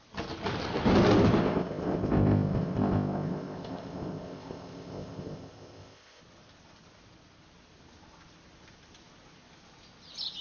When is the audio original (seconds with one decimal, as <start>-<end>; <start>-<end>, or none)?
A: 0.0-1.4; 6.2-10.4

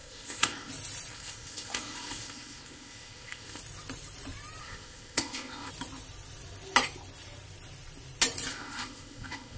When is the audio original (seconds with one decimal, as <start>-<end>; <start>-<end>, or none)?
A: 0.7-1.1; 3.6-4.6; 5.7-8.5

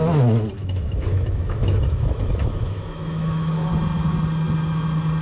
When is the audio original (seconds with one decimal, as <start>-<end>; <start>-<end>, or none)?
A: 0.0-0.6; 3.7-5.2

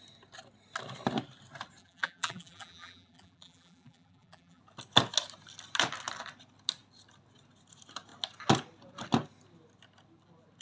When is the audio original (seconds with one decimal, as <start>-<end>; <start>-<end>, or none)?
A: 0.0-1.8; 4.6-10.6

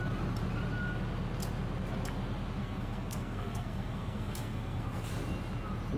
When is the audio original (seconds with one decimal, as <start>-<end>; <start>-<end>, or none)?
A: 0.0-2.6; 5.1-6.0